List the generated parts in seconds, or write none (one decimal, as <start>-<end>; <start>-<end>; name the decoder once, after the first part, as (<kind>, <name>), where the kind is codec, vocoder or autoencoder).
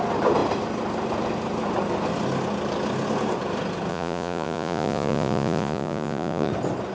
3.9-6.5 (vocoder, Vocos)